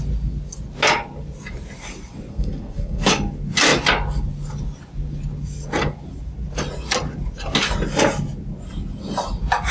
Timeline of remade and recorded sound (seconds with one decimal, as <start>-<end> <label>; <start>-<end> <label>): 0.0-2.3 recorded; 2.3-3.1 remade; 3.1-9.7 recorded